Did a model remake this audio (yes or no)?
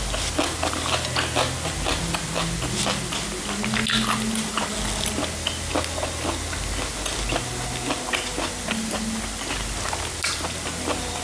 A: no